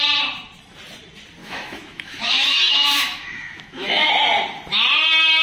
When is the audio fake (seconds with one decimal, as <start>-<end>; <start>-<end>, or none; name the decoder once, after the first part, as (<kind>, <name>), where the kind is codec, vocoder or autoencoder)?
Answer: 1.4-4.1 (autoencoder, DAC-VAE)